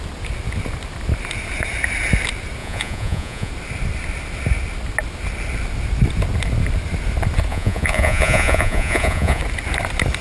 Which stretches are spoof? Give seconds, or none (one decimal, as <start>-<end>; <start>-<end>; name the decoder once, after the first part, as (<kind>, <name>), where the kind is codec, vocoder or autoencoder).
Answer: 2.6-3.5 (vocoder, Vocos); 7.5-9.4